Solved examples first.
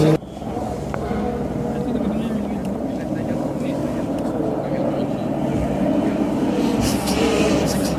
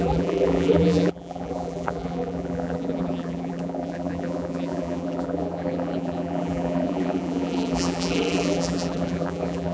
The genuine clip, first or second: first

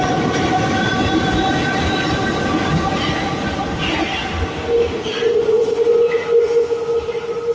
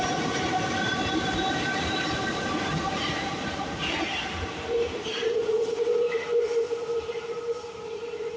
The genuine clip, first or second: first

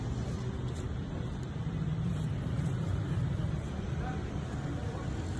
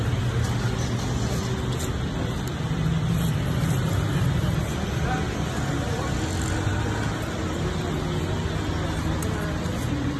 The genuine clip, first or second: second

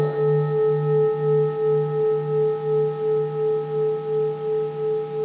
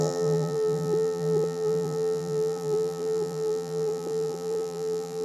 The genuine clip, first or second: first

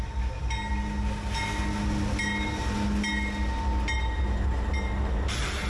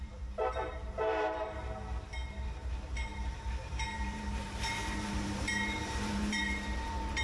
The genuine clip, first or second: first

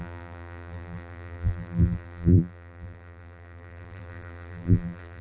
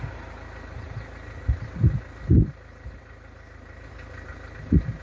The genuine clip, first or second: second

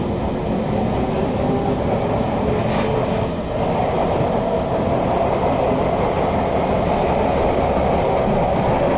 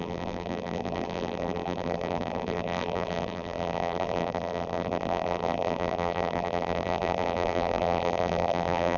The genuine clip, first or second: first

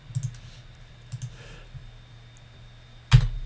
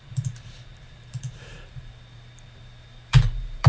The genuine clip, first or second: first